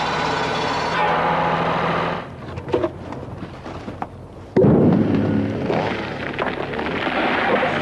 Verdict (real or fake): real